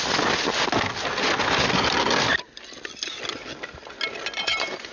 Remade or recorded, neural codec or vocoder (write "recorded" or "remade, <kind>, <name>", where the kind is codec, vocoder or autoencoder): recorded